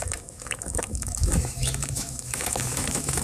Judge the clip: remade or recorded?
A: remade